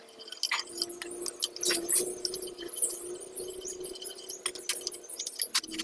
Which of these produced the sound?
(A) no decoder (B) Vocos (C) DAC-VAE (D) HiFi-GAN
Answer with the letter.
A